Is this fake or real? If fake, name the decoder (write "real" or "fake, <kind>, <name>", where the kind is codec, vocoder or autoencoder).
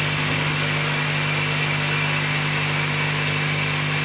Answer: real